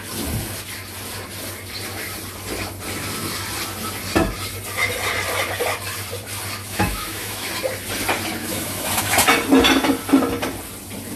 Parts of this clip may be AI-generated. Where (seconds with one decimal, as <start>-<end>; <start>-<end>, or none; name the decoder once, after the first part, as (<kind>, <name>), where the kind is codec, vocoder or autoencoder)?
6.6-7.5 (autoencoder, DAC-VAE); 8.4-9.0